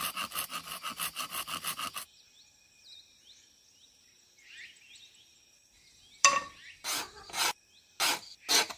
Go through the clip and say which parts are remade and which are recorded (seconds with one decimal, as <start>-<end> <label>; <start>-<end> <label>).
0.0-8.8 recorded